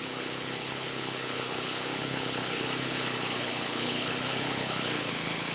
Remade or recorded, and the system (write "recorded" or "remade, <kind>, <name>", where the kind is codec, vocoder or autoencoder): remade, codec, HILCodec